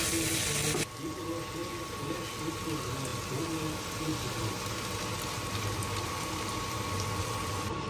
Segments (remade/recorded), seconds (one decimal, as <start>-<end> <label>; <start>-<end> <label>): 0.0-7.9 recorded